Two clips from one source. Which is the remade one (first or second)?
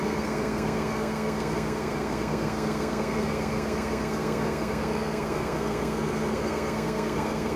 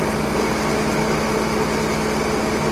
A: first